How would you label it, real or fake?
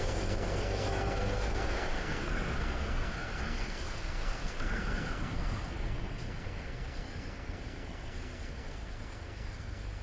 fake